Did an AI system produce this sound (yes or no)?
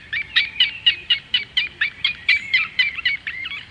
yes